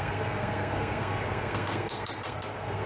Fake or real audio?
fake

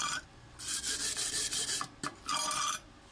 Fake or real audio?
real